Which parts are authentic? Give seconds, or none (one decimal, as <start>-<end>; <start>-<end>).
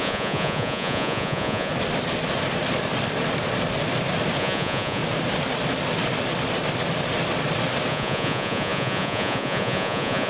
1.7-4.4; 5.0-7.9